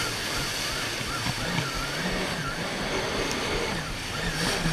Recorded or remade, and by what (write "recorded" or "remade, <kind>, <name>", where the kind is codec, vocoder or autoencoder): recorded